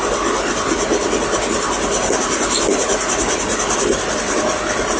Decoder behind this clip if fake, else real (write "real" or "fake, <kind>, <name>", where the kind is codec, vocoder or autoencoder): real